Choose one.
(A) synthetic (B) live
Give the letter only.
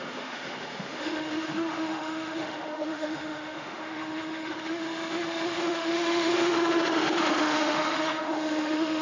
A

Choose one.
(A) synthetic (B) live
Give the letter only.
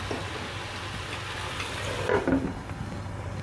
B